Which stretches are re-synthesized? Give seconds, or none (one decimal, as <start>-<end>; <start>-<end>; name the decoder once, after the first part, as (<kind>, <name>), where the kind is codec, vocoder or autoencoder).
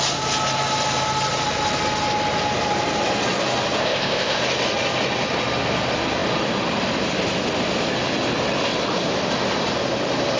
3.8-4.4 (codec, ZipCodec)